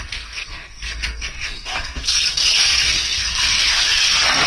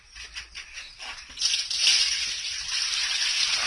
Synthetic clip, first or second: first